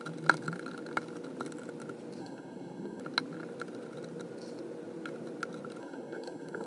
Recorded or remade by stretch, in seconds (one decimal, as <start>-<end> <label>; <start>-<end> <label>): 0.0-2.2 recorded; 2.2-3.0 remade; 3.0-5.8 recorded; 5.8-6.7 remade